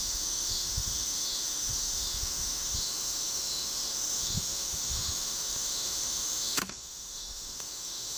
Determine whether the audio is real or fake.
fake